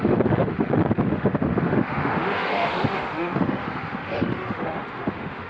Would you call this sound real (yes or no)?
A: no